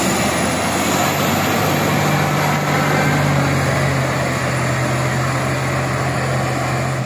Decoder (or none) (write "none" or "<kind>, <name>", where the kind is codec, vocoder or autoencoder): none